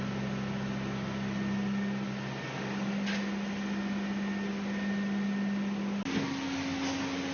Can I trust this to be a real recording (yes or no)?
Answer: yes